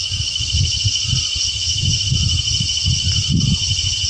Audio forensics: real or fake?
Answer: real